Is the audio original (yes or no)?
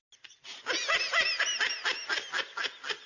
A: yes